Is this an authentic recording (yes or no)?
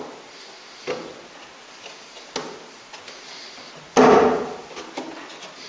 yes